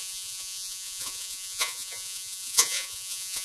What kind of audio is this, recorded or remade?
remade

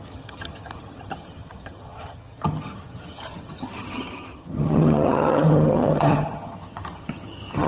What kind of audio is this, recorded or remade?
remade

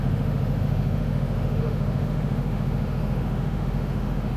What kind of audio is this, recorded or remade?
remade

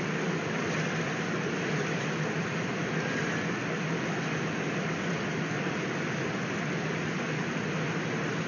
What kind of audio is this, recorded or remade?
remade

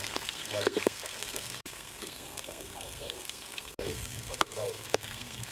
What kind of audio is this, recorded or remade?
remade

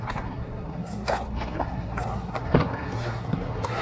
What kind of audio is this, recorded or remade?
remade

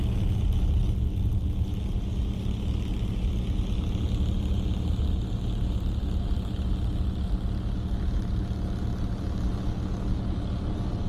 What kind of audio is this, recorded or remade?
recorded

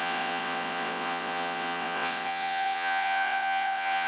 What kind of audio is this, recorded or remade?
remade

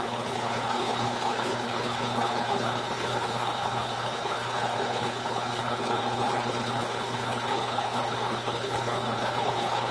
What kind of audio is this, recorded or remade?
remade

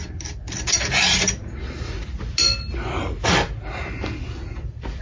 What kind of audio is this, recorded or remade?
recorded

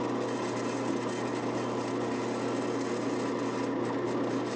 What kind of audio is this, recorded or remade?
recorded